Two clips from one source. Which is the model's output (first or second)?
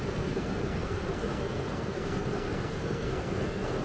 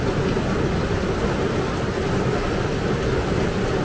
first